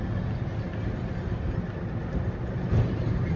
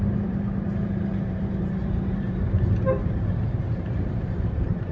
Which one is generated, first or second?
second